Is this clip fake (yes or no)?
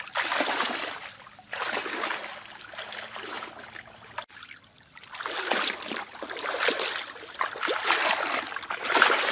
no